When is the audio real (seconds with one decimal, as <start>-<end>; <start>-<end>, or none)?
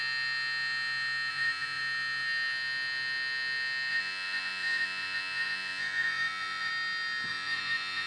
0.0-1.3; 1.8-3.9; 6.7-7.3